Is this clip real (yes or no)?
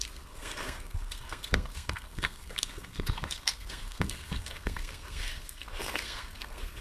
no